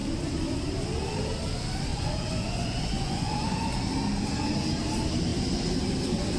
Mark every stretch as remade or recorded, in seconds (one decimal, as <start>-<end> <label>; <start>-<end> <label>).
0.0-1.9 recorded; 1.9-3.7 remade; 3.7-6.4 recorded